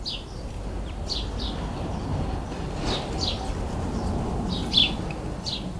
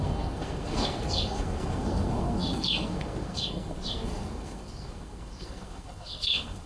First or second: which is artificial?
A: second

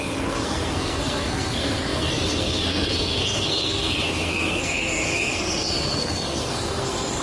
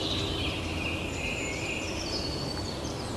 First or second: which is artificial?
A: first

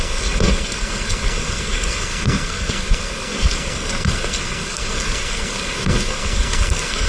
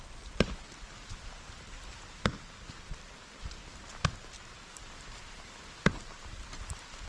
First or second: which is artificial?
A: first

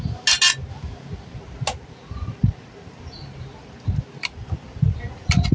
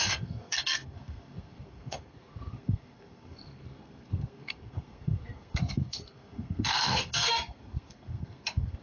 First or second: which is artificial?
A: second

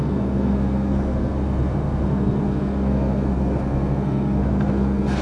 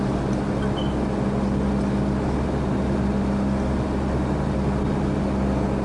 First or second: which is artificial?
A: first